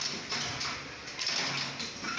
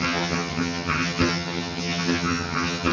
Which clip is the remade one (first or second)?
second